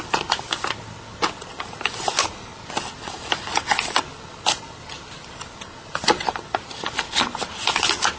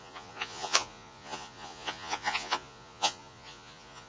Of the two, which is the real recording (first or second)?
first